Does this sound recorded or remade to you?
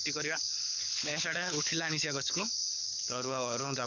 remade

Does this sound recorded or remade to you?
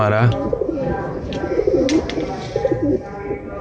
recorded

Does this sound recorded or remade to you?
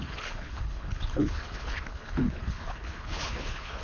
remade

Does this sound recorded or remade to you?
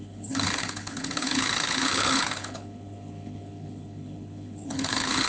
remade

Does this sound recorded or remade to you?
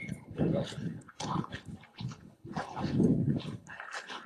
remade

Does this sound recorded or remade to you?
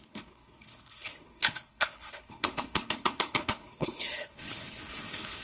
remade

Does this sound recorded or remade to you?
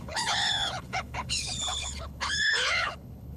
remade